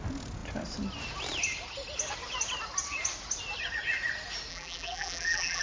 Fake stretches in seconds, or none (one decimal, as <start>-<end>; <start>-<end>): 4.5-5.6